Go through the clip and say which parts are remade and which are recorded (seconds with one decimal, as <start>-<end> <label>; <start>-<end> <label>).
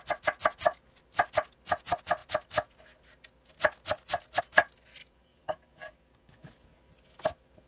0.0-5.0 recorded; 5.0-6.9 remade; 6.9-7.7 recorded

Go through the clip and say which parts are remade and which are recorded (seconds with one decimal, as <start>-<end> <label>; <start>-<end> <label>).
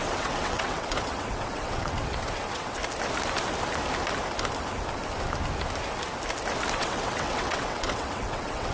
0.0-2.8 remade; 2.8-6.7 recorded; 6.7-8.7 remade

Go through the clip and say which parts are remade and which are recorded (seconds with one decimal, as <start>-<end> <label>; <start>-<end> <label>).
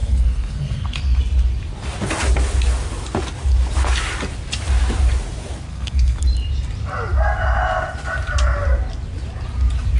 0.0-1.2 remade; 1.2-5.7 recorded; 5.7-6.2 remade; 6.2-10.0 recorded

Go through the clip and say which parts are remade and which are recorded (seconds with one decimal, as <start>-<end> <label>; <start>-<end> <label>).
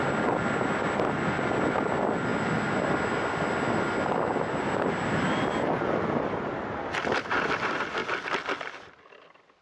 0.0-9.6 recorded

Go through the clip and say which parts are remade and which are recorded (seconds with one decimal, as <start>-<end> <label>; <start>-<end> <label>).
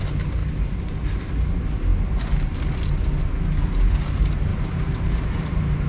0.0-0.4 recorded; 0.4-1.2 remade; 1.2-4.5 recorded; 4.5-5.9 remade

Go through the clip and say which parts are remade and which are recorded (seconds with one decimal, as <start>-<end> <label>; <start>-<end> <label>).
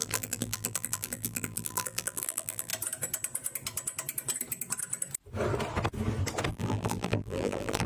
0.0-2.7 remade; 2.7-6.5 recorded; 6.5-7.9 remade